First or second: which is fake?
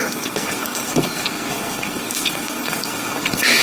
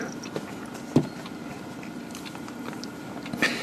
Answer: first